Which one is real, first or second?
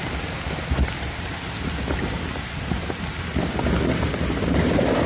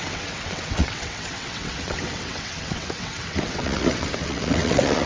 first